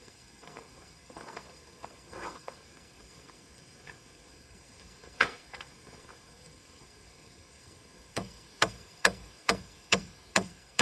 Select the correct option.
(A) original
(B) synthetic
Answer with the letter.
B